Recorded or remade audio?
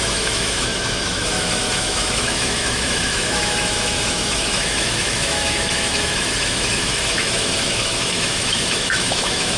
remade